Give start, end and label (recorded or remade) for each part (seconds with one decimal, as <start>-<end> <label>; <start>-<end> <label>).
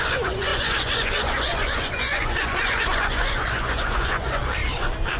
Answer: 0.0-4.4 remade; 4.4-5.2 recorded